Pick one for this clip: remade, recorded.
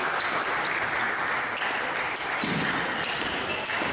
recorded